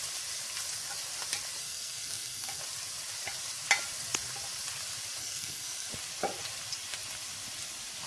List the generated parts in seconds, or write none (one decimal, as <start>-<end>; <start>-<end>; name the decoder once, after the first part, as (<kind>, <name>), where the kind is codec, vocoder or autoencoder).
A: 1.6-2.6 (codec, SNAC); 5.2-5.9